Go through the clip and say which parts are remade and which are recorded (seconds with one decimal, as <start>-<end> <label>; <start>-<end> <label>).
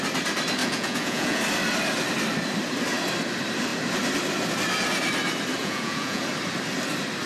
0.0-0.6 recorded; 0.6-1.4 remade; 1.4-5.6 recorded; 5.6-6.2 remade; 6.2-7.3 recorded